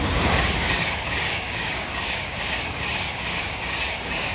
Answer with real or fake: fake